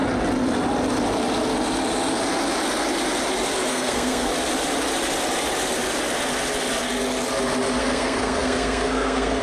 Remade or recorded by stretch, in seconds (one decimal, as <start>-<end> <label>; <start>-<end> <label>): 0.0-3.7 recorded; 3.7-4.3 remade; 4.3-7.8 recorded; 7.8-9.4 remade